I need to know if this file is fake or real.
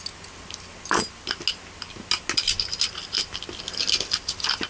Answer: real